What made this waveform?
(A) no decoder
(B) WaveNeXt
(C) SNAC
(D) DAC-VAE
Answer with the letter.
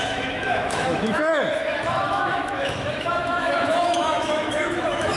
D